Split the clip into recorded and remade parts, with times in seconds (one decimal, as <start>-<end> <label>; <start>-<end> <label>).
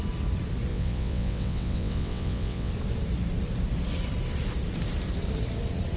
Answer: 0.0-0.7 recorded; 0.7-2.7 remade; 2.7-6.0 recorded